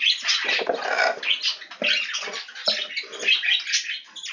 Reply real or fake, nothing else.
real